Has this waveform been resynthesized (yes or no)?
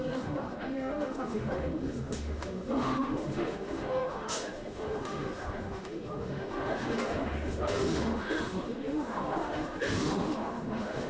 yes